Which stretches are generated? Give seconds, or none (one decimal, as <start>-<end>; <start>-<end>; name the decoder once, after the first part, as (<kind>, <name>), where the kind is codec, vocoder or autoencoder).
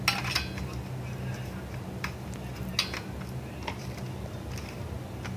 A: none